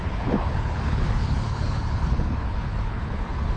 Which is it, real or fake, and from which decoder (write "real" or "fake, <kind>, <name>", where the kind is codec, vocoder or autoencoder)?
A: fake, codec, HILCodec